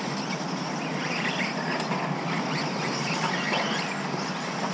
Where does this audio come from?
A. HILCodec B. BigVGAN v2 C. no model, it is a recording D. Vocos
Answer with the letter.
C